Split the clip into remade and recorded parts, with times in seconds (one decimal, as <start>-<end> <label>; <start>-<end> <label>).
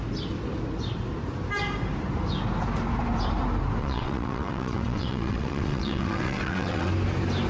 0.0-3.8 recorded; 3.8-6.9 remade; 6.9-7.5 recorded